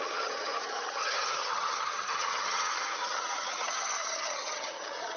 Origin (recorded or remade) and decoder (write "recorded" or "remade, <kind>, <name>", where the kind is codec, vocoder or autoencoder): remade, vocoder, HiFi-GAN